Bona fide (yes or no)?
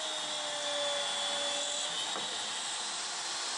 yes